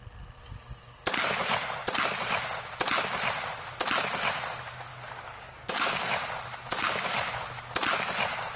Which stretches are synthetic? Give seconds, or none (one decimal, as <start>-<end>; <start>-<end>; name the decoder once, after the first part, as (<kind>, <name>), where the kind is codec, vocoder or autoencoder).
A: 4.9-6.1 (codec, DAC); 6.7-7.3